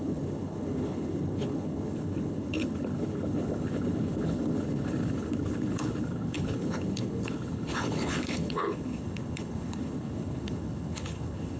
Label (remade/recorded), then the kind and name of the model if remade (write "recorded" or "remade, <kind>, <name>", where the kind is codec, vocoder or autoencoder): remade, codec, HILCodec